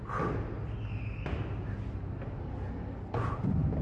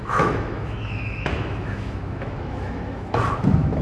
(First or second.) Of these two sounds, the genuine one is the first